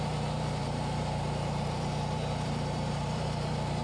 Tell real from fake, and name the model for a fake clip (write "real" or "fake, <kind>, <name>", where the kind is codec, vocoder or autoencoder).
fake, vocoder, BigVGAN v2